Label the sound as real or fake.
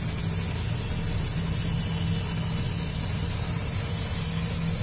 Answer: real